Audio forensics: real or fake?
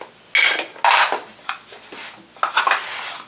real